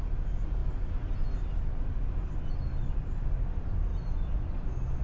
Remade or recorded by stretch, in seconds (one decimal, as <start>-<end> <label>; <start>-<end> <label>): 0.0-5.0 recorded